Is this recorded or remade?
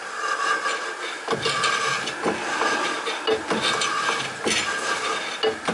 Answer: recorded